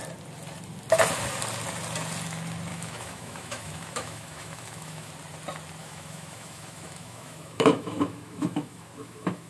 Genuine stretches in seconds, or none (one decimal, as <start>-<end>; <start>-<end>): 0.0-2.7; 5.1-5.8

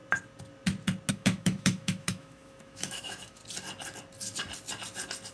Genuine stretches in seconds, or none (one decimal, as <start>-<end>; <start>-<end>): 0.0-1.1; 3.4-5.3

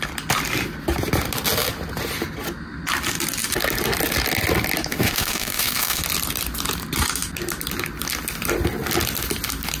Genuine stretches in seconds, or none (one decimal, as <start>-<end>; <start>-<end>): 0.0-4.9; 6.0-9.8

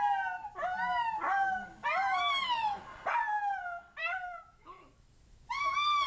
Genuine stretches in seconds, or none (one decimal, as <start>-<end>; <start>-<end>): 0.0-2.0; 2.8-4.0; 5.5-6.1

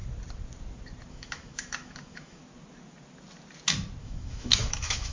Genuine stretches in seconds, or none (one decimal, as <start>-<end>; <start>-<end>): 0.0-1.1; 2.4-4.0

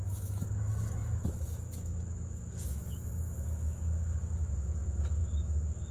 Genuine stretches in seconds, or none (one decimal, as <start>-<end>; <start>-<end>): none

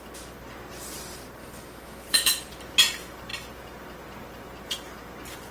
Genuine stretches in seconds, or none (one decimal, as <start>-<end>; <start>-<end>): 0.0-1.4; 2.0-5.5